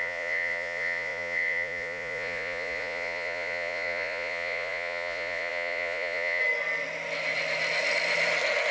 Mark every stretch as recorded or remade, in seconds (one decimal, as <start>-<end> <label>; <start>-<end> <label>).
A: 0.0-6.4 remade; 6.4-8.7 recorded